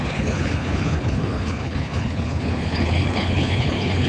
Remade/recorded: remade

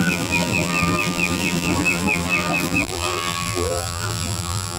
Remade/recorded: remade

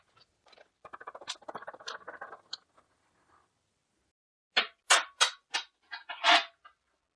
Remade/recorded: recorded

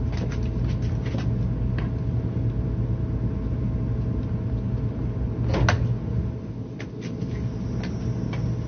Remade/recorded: recorded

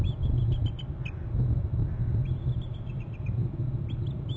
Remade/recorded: recorded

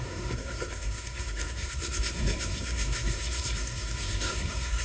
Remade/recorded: remade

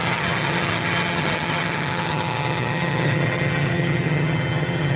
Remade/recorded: remade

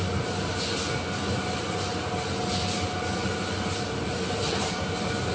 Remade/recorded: recorded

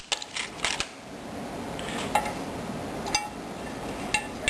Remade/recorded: recorded